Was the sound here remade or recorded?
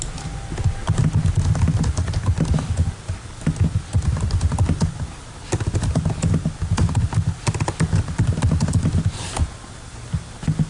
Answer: recorded